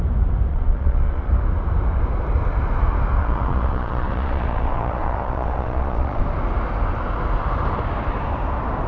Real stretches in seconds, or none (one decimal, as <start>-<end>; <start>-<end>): 0.0-0.5; 1.3-3.2; 6.2-8.9

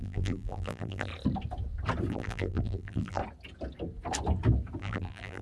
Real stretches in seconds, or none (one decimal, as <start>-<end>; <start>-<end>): 1.1-2.1; 3.2-4.8

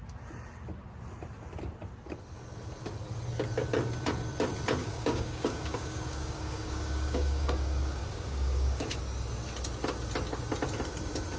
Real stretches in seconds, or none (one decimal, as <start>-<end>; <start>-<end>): 0.0-4.8; 9.0-11.4

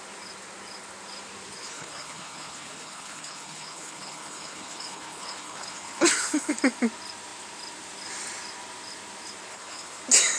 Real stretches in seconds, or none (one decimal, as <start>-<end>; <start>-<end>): 0.0-1.6; 6.5-9.5; 10.0-10.4

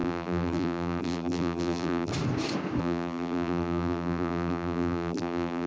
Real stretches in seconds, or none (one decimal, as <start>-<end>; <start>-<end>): 2.1-2.8